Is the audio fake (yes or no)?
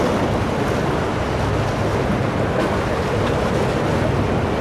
no